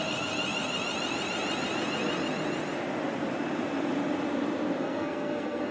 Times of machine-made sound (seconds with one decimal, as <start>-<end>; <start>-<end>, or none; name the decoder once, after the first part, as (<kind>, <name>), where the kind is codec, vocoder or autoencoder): 4.8-5.7 (codec, SNAC)